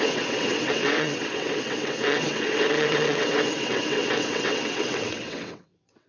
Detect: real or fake fake